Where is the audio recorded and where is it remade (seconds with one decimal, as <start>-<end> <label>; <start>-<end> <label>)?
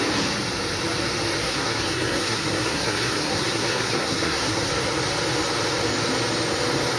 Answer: 0.0-1.4 recorded; 1.4-4.7 remade; 4.7-7.0 recorded